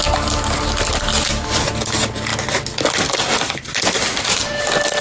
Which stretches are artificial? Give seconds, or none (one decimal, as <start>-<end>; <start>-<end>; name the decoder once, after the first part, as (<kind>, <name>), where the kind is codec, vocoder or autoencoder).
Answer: none